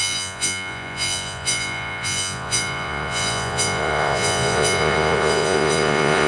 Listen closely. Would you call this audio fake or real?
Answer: fake